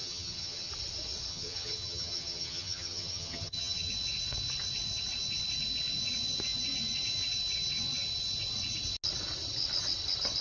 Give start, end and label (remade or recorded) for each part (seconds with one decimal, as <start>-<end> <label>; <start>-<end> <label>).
0.0-0.7 remade; 0.7-1.3 recorded; 1.3-3.9 remade; 3.9-10.4 recorded